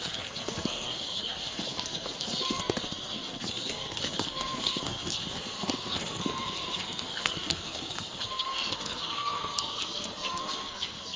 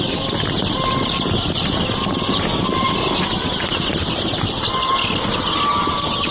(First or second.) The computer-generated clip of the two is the first